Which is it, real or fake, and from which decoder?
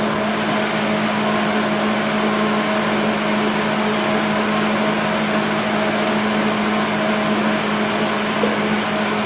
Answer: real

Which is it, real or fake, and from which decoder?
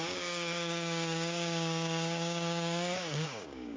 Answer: fake, codec, DAC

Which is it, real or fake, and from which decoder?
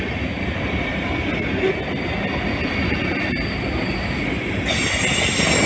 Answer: real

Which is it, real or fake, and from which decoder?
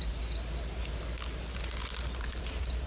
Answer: real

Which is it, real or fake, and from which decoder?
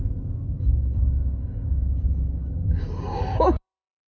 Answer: fake, codec, DAC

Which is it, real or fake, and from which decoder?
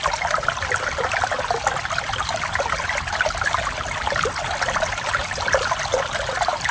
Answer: real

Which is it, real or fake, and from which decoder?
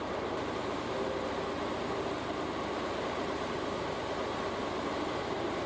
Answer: real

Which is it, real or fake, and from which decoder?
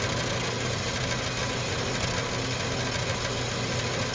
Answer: real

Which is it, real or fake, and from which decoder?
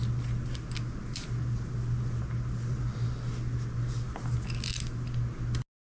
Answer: real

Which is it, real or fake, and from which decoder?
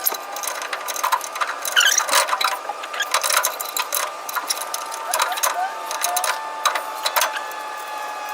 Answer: real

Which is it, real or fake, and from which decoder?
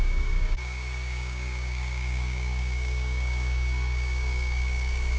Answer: fake, codec, DAC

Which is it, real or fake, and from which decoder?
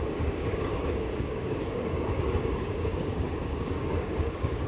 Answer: fake, codec, DAC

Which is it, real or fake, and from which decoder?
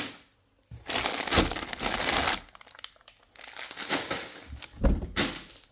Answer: real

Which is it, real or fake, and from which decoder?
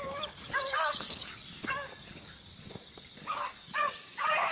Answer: fake, codec, DAC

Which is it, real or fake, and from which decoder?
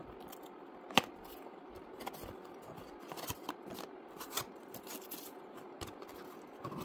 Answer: real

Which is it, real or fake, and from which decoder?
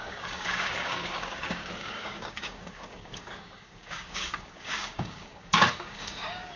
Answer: fake, codec, DAC